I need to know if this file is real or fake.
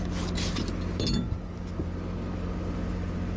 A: real